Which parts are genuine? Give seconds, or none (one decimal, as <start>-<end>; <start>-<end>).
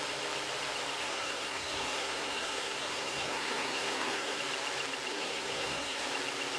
0.0-1.0; 4.4-5.1; 6.1-6.6